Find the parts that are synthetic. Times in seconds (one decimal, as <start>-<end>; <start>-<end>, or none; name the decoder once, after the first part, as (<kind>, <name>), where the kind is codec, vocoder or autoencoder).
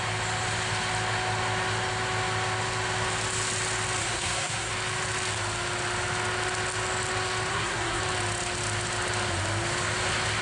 4.0-4.7 (codec, SNAC); 7.5-8.0